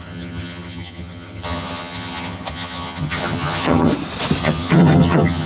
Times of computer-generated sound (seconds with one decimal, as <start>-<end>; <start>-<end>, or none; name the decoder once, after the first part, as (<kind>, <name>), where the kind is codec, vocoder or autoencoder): 0.0-3.9 (vocoder, HiFi-GAN); 4.4-5.5